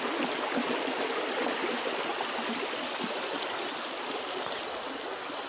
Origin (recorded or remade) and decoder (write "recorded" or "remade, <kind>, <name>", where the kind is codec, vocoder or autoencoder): recorded